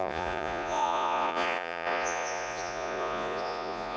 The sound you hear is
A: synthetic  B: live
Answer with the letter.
A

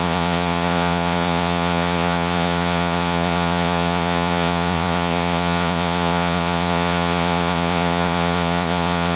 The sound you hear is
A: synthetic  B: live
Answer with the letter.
A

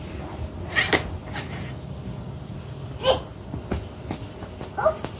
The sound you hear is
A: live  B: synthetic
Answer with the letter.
A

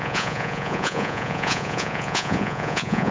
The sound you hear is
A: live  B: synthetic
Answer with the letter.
B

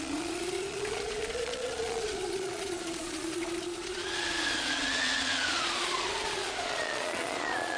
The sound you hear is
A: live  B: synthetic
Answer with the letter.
B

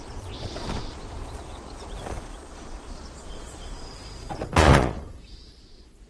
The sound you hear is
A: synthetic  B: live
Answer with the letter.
A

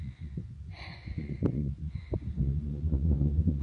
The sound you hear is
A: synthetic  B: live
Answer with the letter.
A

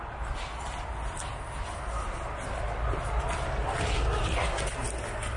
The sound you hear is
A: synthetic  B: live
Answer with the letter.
B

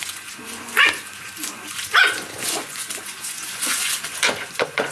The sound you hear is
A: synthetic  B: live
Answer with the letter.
A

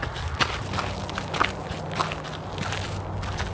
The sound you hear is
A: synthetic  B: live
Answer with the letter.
B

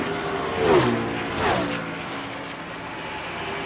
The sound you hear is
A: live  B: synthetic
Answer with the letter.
A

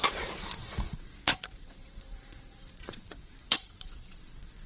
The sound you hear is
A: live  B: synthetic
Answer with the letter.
B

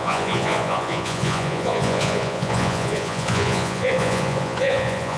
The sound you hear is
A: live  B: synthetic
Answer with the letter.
B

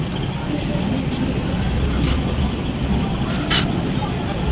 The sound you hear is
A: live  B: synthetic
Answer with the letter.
A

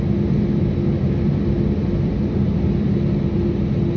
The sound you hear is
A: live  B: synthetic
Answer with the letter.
A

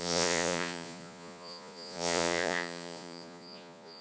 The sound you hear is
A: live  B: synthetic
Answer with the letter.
B